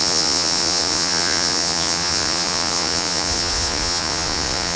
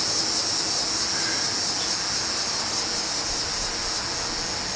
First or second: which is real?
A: second